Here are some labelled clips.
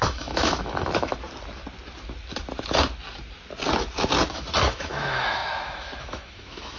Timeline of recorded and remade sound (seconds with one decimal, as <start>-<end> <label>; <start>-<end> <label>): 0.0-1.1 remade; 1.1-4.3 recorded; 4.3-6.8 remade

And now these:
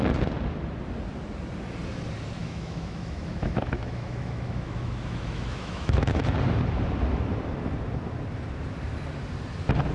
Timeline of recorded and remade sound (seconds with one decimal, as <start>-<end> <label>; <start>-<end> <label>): 0.0-2.4 recorded; 2.4-6.2 remade; 6.2-9.9 recorded

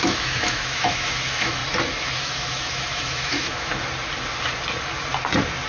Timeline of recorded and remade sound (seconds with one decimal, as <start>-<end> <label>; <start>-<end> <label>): 0.0-1.6 remade; 1.6-2.2 recorded; 2.2-3.7 remade; 3.7-5.7 recorded